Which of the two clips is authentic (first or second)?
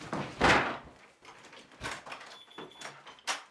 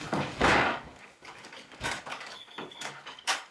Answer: first